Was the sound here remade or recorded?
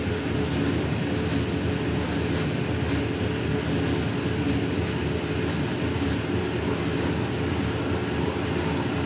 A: recorded